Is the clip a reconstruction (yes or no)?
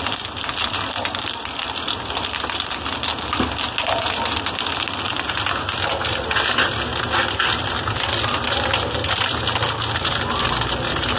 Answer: no